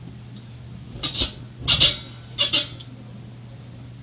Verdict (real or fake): real